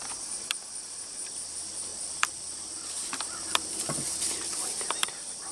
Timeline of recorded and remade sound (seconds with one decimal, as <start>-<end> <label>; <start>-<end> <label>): 0.0-5.5 remade

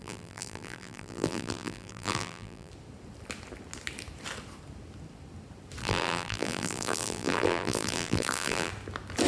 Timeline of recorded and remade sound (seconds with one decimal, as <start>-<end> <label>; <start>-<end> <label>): 0.0-2.7 remade; 2.7-5.8 recorded; 5.8-8.7 remade; 8.7-9.3 recorded